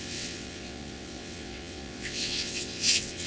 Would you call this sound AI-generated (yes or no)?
yes